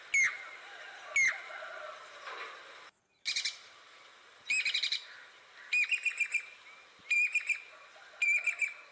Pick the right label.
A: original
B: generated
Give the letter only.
A